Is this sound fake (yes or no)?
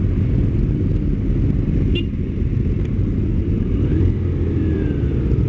no